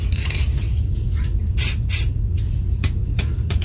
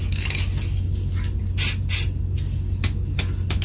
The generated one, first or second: first